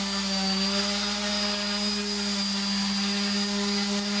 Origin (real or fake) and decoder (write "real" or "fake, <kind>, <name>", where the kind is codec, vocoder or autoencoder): real